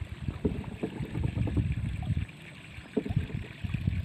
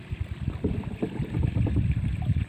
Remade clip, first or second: second